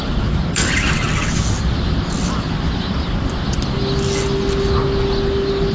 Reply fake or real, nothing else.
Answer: real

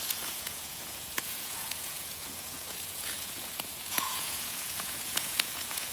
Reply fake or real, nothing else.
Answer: fake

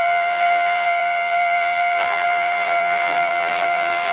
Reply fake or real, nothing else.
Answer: fake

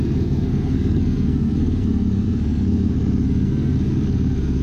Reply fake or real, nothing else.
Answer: fake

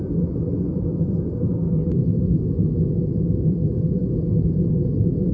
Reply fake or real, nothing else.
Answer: fake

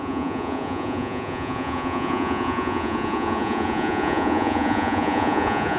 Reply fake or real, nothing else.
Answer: fake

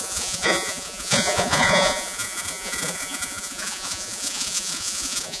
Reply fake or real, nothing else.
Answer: fake